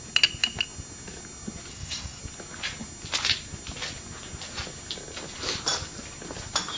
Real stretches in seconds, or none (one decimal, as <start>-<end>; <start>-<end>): 0.0-1.7; 2.2-6.8